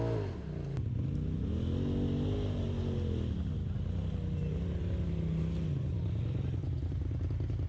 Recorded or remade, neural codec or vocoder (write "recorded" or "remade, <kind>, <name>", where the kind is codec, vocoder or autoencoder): recorded